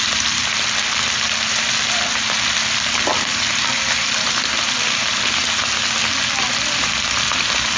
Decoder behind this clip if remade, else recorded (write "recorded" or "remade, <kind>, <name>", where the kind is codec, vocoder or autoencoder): recorded